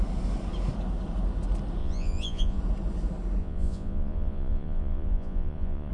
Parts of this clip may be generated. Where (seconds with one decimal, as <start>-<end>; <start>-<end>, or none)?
1.8-2.6; 3.4-5.9